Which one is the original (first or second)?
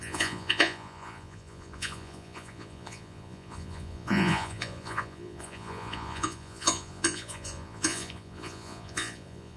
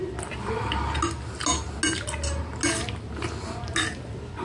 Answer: second